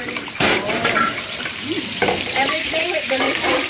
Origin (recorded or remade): remade